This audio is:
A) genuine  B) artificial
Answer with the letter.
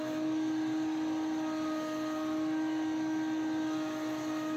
A